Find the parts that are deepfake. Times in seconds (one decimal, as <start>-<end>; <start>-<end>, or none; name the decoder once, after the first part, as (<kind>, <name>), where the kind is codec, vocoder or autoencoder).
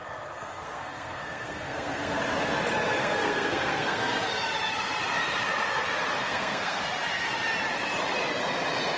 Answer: 0.0-2.2 (codec, SNAC); 3.0-4.3; 6.2-6.8